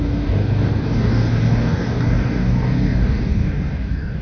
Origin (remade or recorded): remade